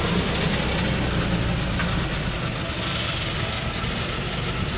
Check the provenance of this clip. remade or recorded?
recorded